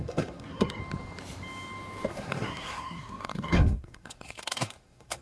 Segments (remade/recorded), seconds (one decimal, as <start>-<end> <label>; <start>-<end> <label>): 0.0-0.8 remade; 0.8-2.1 recorded; 2.1-5.2 remade